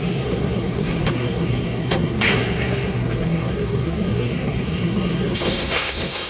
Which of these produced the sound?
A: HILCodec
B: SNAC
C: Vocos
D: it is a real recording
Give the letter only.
B